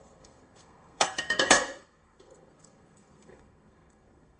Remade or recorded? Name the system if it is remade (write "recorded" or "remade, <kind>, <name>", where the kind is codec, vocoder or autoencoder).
remade, codec, SNAC